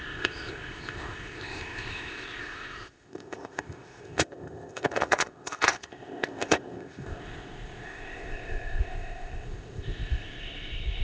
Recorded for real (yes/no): no